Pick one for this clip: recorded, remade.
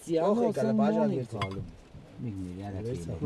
recorded